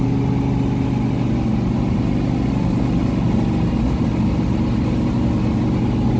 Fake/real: real